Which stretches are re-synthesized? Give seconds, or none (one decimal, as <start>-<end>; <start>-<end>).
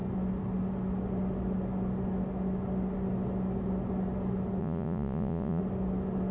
4.6-5.6